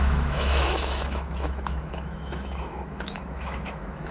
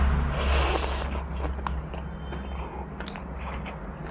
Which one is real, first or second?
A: second